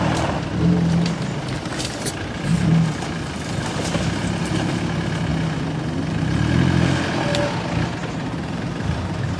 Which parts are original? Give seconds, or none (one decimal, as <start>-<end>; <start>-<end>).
0.0-1.7; 2.4-8.0